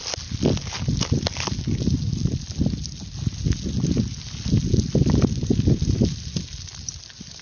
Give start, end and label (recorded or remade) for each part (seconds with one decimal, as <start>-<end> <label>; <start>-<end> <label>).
0.0-7.4 recorded